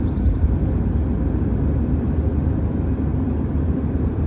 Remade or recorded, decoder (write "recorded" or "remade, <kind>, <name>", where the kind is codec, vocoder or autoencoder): recorded